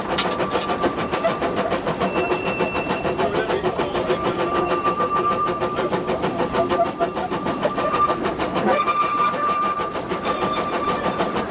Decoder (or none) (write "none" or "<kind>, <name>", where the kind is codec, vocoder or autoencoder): vocoder, BigVGAN v2